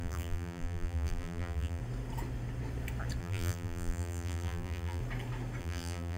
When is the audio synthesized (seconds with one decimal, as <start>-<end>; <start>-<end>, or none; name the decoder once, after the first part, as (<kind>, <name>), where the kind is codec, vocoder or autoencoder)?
0.0-1.8 (vocoder, BigVGAN v2); 3.2-5.0; 5.6-6.2